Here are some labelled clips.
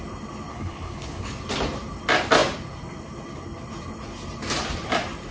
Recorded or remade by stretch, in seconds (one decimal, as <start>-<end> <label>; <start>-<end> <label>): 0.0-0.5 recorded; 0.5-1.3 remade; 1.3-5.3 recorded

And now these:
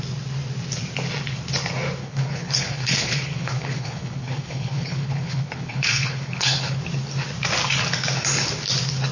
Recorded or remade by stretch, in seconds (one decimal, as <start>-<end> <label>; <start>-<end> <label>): 0.0-2.0 recorded; 2.0-6.8 remade; 6.8-9.1 recorded

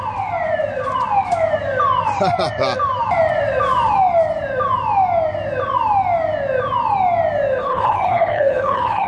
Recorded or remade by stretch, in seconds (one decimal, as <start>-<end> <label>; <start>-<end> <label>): 0.0-7.6 recorded; 7.6-9.1 remade

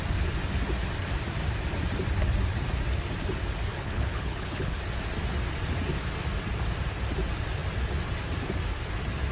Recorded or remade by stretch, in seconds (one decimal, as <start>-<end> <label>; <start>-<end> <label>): 0.0-3.7 recorded; 3.7-4.8 remade; 4.8-9.3 recorded

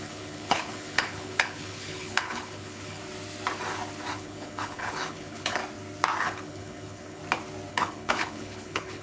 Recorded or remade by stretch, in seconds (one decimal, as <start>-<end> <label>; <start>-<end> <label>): 0.0-3.0 remade; 3.0-4.1 recorded; 4.1-5.6 remade; 5.6-6.2 recorded; 6.2-7.2 remade; 7.2-7.7 recorded; 7.7-9.0 remade

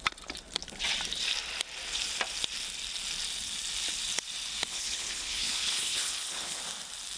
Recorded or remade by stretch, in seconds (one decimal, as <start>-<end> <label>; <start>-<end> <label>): 0.0-4.7 recorded; 4.7-6.6 remade; 6.6-7.2 recorded

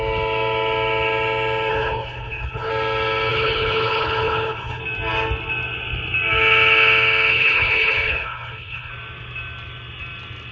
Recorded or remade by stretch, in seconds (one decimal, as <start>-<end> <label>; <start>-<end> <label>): 0.0-1.7 recorded; 1.7-2.7 remade; 2.7-3.3 recorded; 3.3-4.8 remade; 4.8-7.3 recorded; 7.3-8.9 remade; 8.9-10.5 recorded